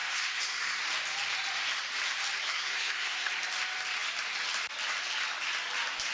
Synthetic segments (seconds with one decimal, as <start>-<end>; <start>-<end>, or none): 0.0-0.8; 2.5-3.3